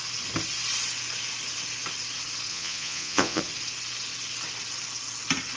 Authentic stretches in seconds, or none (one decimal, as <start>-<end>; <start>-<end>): 0.0-2.5; 3.4-5.6